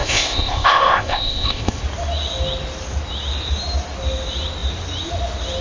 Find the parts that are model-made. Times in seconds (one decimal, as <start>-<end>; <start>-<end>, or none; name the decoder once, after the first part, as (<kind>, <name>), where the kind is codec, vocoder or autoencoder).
0.0-1.8 (codec, ZipCodec)